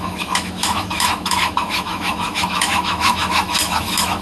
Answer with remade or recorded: remade